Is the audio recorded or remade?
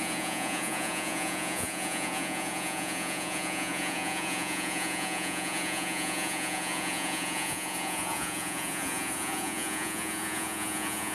remade